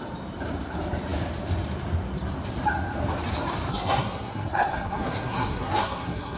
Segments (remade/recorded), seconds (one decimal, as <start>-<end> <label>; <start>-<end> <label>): 0.0-3.7 recorded; 3.7-6.4 remade